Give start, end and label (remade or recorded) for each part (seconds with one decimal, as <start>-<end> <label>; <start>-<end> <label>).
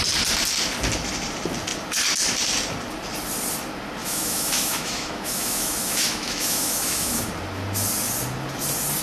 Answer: 0.0-4.0 recorded; 4.0-7.3 remade; 7.3-9.0 recorded